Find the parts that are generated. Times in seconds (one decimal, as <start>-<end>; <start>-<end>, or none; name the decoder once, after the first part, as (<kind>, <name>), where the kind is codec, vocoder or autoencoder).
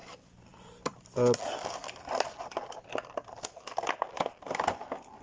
none